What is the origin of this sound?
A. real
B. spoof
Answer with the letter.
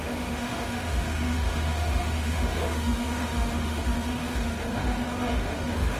B